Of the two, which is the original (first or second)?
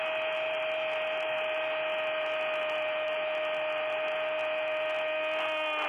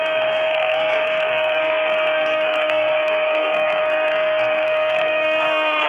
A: first